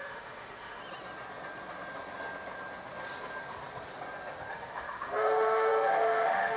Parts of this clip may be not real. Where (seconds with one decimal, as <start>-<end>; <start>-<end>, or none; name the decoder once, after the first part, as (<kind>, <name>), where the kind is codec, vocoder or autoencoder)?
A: 0.0-0.8 (autoencoder, DAC-VAE); 4.5-6.6